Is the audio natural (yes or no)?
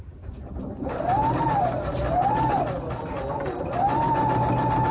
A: yes